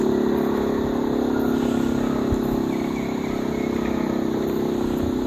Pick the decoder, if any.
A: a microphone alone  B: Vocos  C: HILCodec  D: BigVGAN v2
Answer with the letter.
A